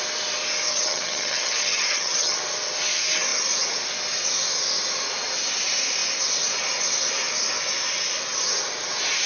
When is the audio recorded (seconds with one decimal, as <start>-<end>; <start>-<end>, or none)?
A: 0.0-0.7; 2.4-9.3